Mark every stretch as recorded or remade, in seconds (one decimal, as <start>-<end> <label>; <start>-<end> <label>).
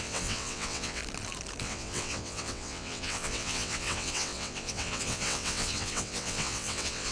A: 0.0-1.0 remade; 1.0-1.6 recorded; 1.6-7.1 remade